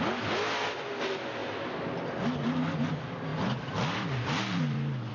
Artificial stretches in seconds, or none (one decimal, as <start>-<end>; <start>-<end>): 3.3-5.1